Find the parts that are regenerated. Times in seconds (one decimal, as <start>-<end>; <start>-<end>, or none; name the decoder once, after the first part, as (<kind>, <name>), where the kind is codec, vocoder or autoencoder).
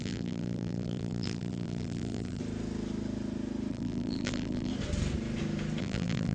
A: 0.0-2.4 (vocoder, BigVGAN v2); 3.7-4.7; 5.8-6.3